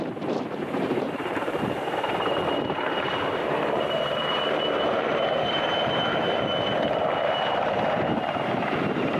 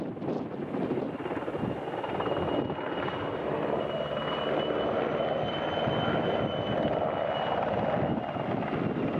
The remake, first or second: first